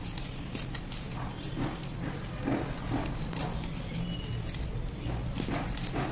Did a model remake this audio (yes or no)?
no